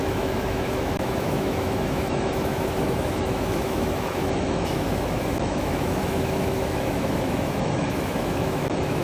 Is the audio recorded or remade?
remade